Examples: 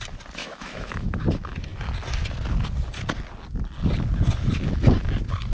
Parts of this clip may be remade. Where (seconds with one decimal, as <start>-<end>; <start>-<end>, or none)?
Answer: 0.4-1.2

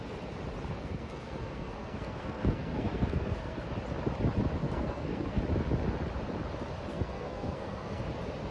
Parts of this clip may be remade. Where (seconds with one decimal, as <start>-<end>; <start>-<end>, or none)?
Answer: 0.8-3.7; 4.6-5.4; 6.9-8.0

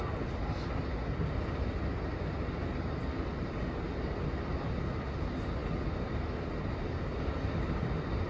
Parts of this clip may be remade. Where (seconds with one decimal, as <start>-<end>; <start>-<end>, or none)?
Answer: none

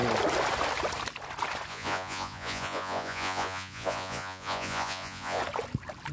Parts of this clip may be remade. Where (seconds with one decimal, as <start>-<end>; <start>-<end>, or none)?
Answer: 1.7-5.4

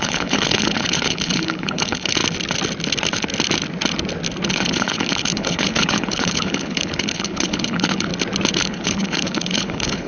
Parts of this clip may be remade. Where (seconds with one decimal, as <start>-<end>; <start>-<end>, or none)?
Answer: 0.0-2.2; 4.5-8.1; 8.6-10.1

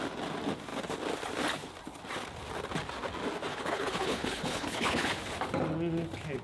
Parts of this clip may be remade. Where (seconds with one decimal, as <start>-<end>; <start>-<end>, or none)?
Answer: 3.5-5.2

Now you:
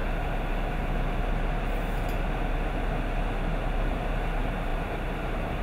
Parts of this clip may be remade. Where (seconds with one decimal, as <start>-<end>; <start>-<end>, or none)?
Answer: none

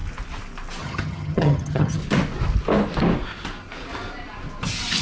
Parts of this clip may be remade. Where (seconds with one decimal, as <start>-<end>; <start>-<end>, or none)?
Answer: 0.8-2.0